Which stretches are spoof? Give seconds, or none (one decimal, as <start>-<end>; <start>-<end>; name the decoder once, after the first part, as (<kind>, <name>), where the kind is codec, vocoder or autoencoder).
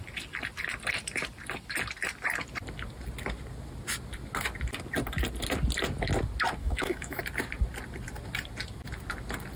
6.6-7.2 (autoencoder, DAC-VAE)